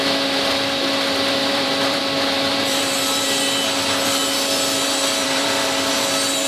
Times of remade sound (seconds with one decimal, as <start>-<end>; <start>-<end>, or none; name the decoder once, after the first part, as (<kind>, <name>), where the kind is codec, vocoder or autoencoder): 1.4-2.0 (vocoder, BigVGAN v2); 2.5-3.4; 5.2-5.9